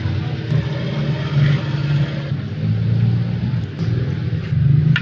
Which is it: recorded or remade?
recorded